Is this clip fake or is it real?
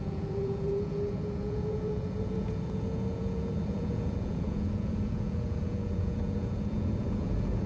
fake